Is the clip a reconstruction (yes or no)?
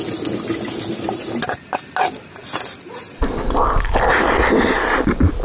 no